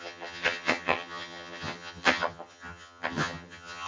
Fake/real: fake